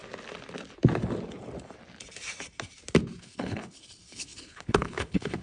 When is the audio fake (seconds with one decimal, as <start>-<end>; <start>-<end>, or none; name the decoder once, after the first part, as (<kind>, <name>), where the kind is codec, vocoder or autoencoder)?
3.2-5.4 (codec, HILCodec)

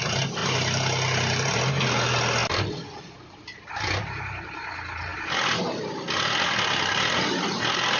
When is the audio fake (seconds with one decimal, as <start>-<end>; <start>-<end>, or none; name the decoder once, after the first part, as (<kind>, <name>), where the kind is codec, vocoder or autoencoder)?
none

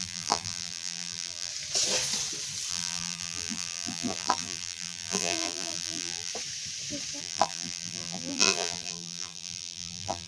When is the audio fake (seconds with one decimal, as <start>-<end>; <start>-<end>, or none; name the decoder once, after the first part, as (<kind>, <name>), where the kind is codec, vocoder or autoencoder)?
0.0-1.5 (vocoder, BigVGAN v2); 2.7-6.3; 7.2-10.3